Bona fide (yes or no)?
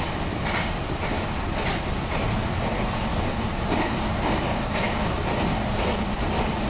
yes